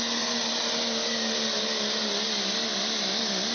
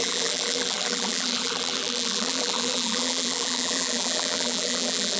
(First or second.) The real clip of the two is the first